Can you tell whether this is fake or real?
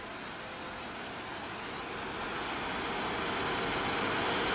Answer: real